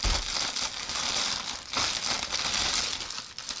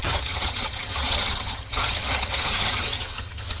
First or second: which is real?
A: first